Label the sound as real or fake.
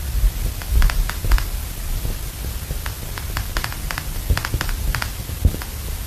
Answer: real